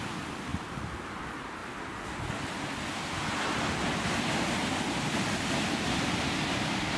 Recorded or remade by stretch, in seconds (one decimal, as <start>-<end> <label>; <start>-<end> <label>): 0.0-0.5 recorded; 0.5-1.2 remade; 1.2-7.0 recorded